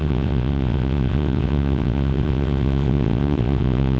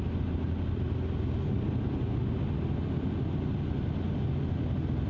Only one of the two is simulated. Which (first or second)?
first